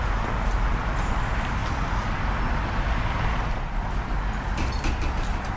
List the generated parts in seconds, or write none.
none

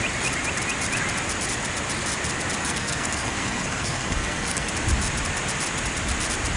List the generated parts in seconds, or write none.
2.6-4.7 (codec, SNAC)

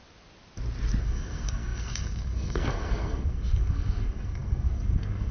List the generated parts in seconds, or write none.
1.0-5.3 (codec, SNAC)

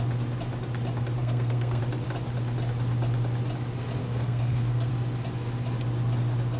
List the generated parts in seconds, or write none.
1.2-1.8 (codec, SNAC); 4.0-4.9

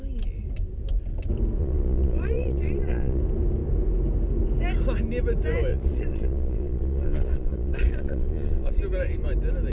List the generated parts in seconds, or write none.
1.6-3.2 (vocoder, Vocos); 5.7-8.8

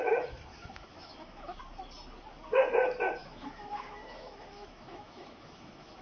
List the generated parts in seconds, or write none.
0.5-1.6 (autoencoder, DAC-VAE); 3.2-6.0

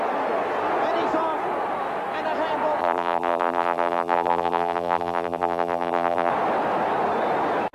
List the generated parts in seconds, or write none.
2.8-6.3 (vocoder, BigVGAN v2)